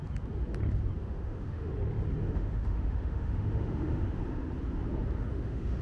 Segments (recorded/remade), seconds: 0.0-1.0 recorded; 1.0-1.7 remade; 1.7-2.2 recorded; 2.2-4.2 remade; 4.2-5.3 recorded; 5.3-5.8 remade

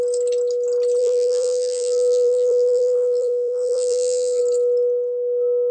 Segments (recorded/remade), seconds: 0.0-1.0 recorded; 1.0-4.4 remade; 4.4-5.7 recorded

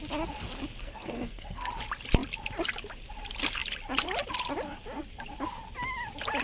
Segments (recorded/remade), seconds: 0.0-0.8 recorded; 0.8-1.7 remade; 1.7-6.4 recorded

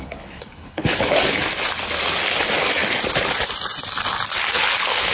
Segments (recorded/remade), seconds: 0.0-1.4 remade; 1.4-4.5 recorded; 4.5-5.1 remade

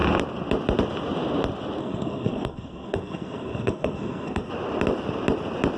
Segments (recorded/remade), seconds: 0.0-1.8 recorded; 1.8-4.5 remade; 4.5-5.8 recorded

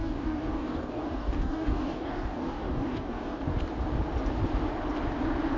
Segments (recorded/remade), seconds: 0.0-3.4 remade; 3.4-5.6 recorded

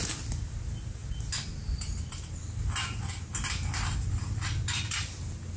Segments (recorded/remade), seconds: 0.0-5.6 recorded